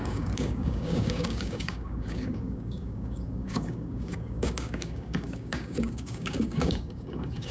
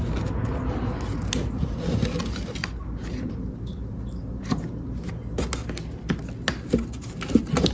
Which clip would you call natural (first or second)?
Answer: second